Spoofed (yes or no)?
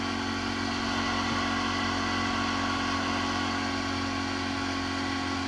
no